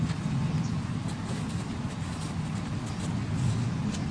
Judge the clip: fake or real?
real